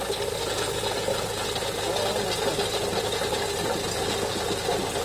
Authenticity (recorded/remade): recorded